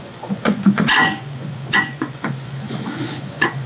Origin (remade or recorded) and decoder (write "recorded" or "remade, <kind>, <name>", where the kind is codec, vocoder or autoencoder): remade, vocoder, Vocos